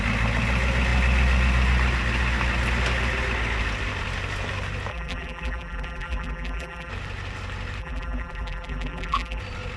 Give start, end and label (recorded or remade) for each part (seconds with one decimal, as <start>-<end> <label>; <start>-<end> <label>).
0.0-4.9 recorded; 4.9-6.9 remade; 6.9-7.8 recorded; 7.8-9.4 remade; 9.4-9.8 recorded